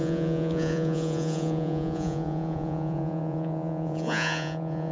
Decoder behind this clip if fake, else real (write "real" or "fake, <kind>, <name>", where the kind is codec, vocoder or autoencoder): fake, vocoder, Vocos